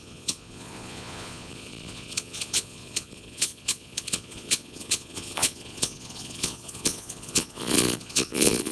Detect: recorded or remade remade